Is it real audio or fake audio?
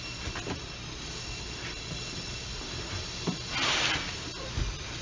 real